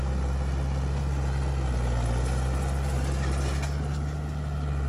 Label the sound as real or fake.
real